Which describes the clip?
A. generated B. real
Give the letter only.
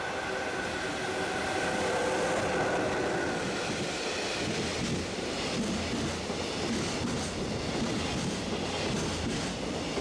B